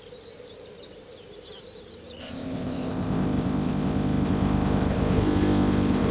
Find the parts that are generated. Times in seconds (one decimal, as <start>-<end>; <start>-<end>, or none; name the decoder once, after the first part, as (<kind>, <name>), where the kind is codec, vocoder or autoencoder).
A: 2.2-6.1 (codec, ZipCodec)